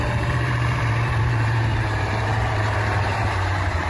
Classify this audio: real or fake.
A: fake